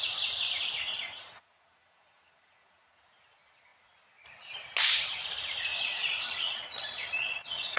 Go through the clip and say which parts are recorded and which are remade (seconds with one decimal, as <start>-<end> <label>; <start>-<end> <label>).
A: 0.0-0.9 recorded; 0.9-3.0 remade; 3.0-5.7 recorded; 5.7-7.8 remade